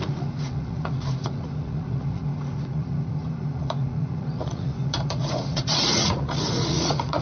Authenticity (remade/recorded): remade